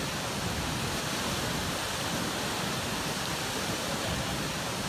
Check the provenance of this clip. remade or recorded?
remade